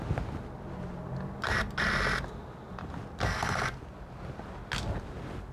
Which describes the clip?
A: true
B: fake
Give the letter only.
A